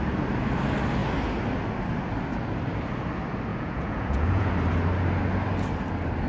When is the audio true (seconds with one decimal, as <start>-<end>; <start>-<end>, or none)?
0.0-3.5; 4.5-6.3